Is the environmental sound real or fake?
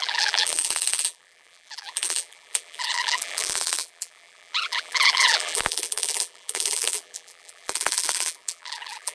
fake